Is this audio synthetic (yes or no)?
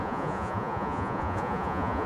yes